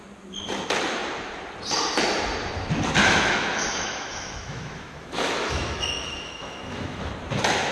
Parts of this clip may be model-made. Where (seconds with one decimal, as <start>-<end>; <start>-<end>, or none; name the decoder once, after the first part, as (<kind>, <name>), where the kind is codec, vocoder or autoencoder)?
3.0-7.1 (autoencoder, DAC-VAE)